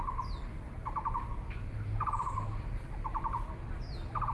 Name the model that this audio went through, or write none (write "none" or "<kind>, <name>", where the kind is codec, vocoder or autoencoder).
none